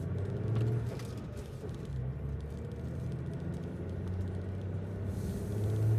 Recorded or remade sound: recorded